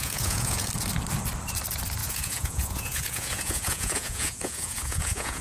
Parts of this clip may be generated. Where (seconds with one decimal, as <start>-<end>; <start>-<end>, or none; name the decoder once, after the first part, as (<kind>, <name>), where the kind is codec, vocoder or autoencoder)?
0.0-0.7 (vocoder, Vocos); 2.0-5.4